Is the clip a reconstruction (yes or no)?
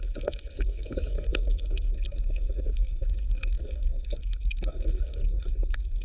yes